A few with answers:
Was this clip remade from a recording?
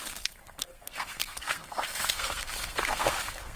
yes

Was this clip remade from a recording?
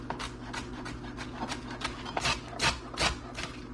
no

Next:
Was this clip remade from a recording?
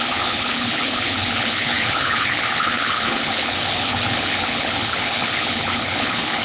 yes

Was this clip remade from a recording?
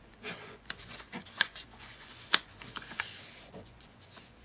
yes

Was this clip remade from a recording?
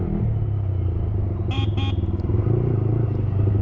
no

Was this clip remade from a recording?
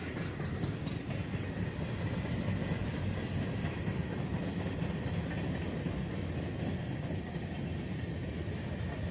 no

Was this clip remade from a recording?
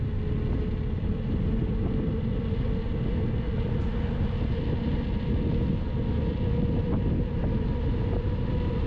no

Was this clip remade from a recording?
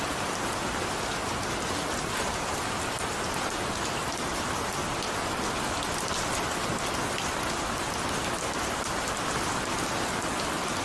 no